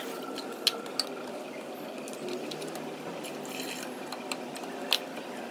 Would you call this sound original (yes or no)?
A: yes